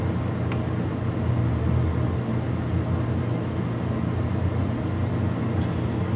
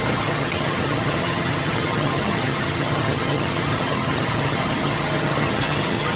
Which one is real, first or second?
first